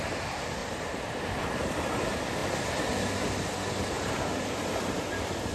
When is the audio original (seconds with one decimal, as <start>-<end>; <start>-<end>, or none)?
0.0-0.6; 1.4-5.5